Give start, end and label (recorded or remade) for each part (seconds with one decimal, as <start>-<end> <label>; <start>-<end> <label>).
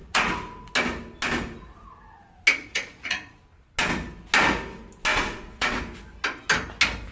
0.0-0.7 remade; 0.7-2.6 recorded; 2.6-3.4 remade; 3.4-5.1 recorded; 5.1-5.8 remade; 5.8-7.1 recorded